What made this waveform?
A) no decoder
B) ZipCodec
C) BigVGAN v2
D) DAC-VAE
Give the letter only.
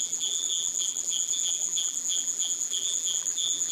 C